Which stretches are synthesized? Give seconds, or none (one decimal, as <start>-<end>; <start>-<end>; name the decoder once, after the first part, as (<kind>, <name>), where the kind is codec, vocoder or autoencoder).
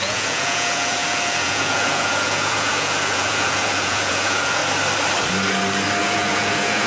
0.0-4.6 (vocoder, Vocos); 6.0-6.9